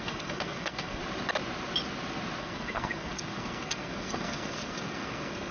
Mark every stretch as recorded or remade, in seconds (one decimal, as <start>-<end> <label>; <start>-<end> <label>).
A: 0.0-1.0 remade; 1.0-2.4 recorded; 2.4-5.5 remade